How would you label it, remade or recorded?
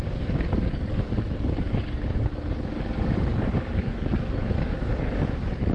remade